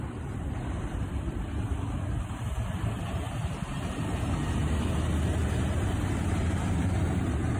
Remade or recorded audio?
remade